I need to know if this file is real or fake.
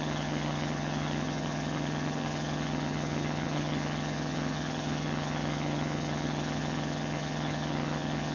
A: fake